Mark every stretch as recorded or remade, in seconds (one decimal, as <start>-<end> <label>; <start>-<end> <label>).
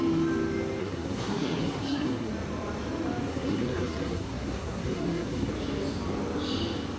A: 0.0-0.8 recorded; 0.8-2.3 remade; 2.3-3.3 recorded; 3.3-5.5 remade; 5.5-7.0 recorded